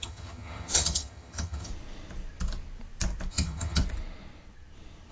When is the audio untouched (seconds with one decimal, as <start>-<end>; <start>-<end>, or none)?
1.7-3.3; 3.8-5.1